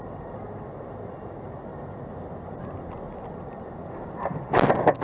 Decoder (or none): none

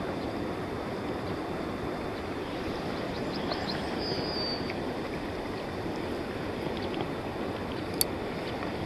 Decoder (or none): none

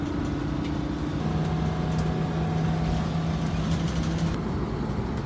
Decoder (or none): none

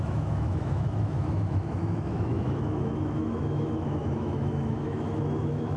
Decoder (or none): autoencoder, DAC-VAE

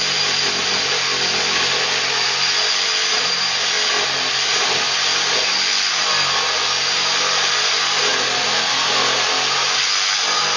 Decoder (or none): none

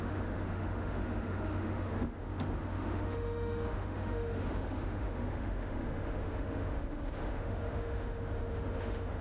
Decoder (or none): autoencoder, DAC-VAE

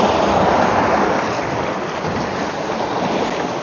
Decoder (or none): none